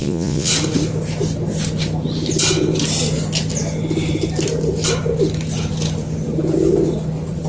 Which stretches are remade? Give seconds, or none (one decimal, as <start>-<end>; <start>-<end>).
0.0-0.5